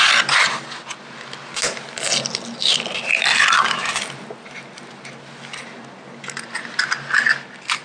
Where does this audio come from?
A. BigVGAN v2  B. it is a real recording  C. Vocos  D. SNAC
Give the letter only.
B